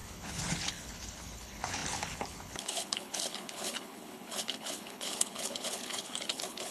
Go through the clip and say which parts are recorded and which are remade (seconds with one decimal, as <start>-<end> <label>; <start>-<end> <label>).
0.0-6.7 remade